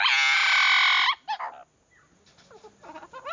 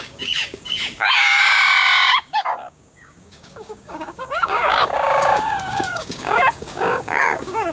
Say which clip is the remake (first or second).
second